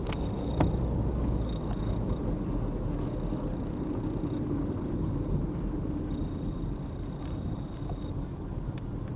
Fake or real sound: real